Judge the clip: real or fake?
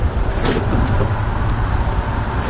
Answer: fake